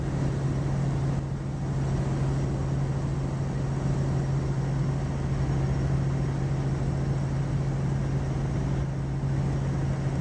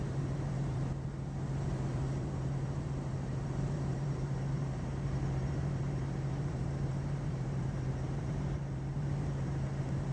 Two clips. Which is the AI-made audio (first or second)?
second